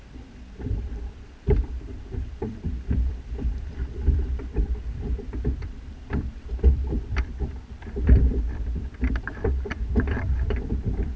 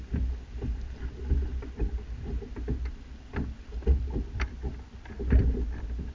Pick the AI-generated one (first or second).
first